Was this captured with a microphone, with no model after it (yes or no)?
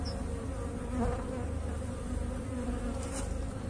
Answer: yes